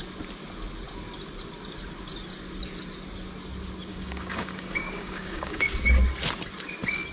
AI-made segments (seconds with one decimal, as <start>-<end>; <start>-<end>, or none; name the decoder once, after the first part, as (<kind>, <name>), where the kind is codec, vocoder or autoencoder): 3.9-5.7 (codec, DAC)